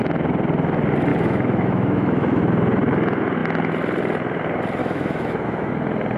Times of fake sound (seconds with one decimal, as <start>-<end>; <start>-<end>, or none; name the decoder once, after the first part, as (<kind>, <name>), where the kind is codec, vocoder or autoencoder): 1.1-2.4 (autoencoder, DAC-VAE); 4.8-5.7